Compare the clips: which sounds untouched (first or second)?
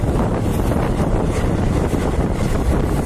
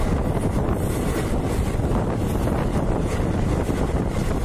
second